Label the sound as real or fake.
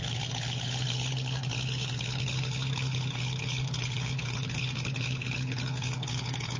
fake